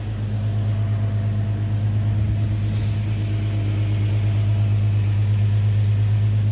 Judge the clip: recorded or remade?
recorded